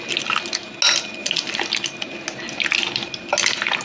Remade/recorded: recorded